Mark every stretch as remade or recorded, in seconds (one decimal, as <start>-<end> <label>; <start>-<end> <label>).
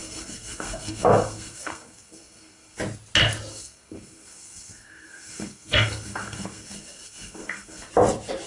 0.0-2.8 remade; 2.8-3.5 recorded; 3.5-7.9 remade; 7.9-8.5 recorded